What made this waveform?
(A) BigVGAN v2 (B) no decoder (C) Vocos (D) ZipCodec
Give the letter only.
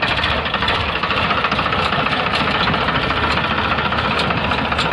A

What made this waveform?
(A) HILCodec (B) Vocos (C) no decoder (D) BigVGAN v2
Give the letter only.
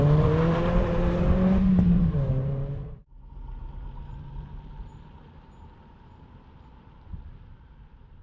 D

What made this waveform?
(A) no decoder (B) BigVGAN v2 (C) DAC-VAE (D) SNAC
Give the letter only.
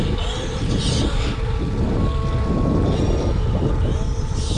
A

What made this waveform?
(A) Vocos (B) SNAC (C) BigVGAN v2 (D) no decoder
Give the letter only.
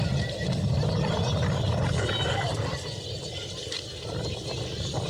D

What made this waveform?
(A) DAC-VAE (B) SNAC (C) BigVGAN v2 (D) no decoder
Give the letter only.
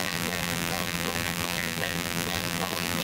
C